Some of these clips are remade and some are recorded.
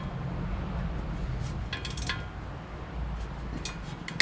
recorded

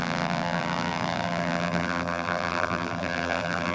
remade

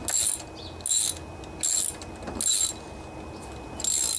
recorded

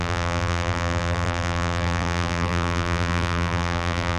remade